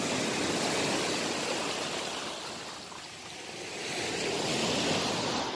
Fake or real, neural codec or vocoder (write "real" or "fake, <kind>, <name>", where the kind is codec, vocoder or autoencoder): real